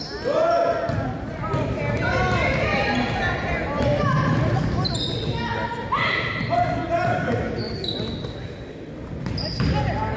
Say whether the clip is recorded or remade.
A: recorded